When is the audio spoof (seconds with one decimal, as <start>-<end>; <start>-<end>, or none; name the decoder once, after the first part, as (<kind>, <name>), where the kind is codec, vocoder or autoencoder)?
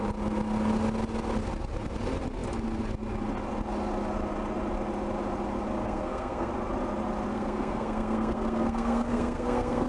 5.8-6.5 (codec, SNAC); 7.3-9.9